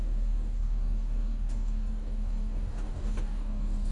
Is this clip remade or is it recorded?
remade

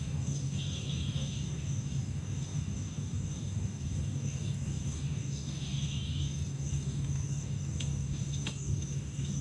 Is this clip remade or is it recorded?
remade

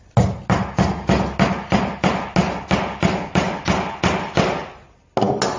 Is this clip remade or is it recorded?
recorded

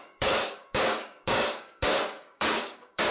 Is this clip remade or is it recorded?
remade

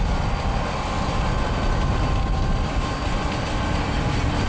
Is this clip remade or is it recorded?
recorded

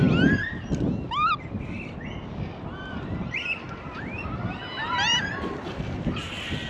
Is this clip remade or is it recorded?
recorded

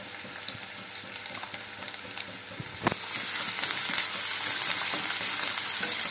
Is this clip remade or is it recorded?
recorded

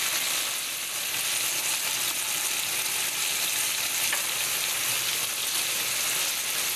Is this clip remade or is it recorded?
recorded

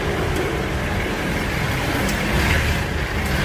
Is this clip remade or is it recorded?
recorded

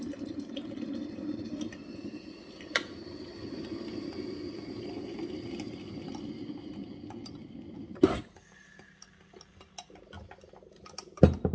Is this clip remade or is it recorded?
recorded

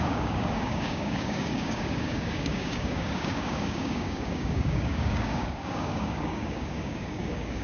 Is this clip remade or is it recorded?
remade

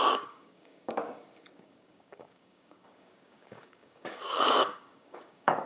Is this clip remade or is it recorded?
remade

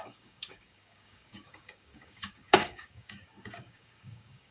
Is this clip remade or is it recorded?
remade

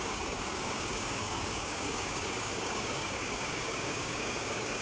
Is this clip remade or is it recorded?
remade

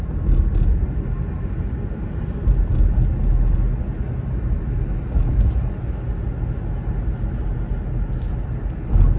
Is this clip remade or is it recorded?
recorded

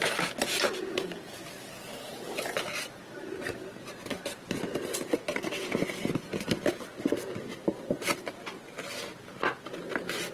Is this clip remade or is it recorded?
recorded